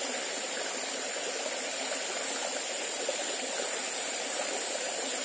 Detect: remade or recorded recorded